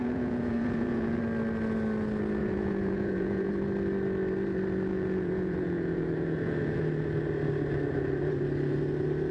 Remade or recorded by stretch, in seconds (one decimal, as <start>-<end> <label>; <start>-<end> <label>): 0.0-1.2 remade; 1.2-2.4 recorded; 2.4-3.5 remade; 3.5-4.9 recorded; 4.9-6.8 remade; 6.8-9.3 recorded